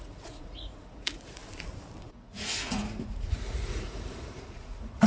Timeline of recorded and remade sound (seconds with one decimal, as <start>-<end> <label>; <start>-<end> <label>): 0.0-1.4 remade; 1.4-2.0 recorded; 2.0-5.1 remade